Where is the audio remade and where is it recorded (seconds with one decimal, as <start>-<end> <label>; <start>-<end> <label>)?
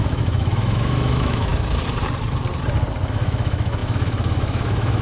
0.0-1.5 remade; 1.5-3.1 recorded; 3.1-5.0 remade